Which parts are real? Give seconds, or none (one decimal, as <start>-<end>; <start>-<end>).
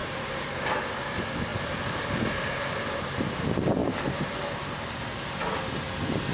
0.7-1.5; 3.2-3.8; 4.8-6.3